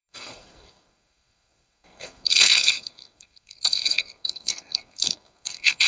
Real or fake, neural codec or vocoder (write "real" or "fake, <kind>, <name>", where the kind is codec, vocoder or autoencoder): fake, codec, SNAC